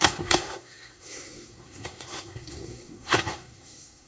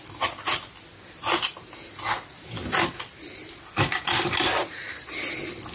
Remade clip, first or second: first